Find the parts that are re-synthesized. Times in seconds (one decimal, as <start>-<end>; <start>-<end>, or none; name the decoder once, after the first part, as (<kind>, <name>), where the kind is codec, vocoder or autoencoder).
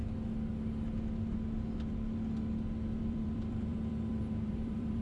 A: 3.0-5.0 (vocoder, BigVGAN v2)